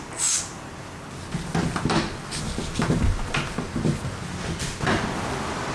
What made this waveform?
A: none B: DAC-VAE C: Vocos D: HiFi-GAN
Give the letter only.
A